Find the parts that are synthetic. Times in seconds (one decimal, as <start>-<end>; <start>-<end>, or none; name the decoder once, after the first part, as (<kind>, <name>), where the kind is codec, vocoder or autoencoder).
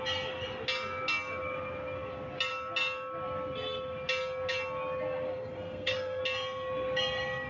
5.3-6.2 (codec, SNAC)